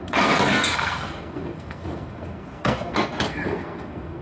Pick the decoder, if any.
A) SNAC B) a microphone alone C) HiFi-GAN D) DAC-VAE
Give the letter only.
A